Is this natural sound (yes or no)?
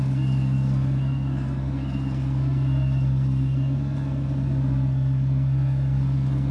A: no